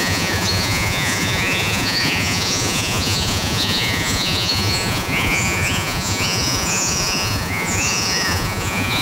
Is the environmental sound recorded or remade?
remade